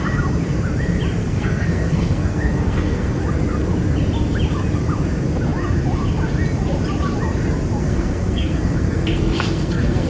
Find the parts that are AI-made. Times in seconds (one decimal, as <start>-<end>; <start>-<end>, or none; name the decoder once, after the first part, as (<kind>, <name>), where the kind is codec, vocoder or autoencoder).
1.2-3.2 (codec, SNAC); 7.8-10.1